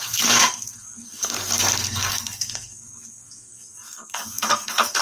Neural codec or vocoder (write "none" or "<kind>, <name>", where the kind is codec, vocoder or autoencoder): codec, SNAC